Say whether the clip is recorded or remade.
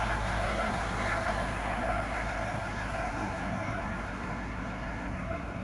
remade